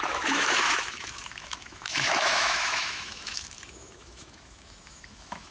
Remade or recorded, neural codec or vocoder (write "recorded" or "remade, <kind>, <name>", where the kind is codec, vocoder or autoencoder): remade, autoencoder, DAC-VAE